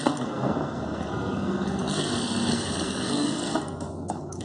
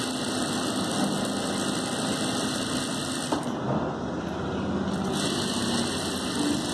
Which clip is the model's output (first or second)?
first